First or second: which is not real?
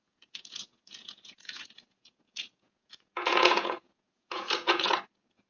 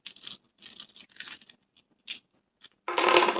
first